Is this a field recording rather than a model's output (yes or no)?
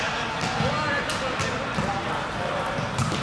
yes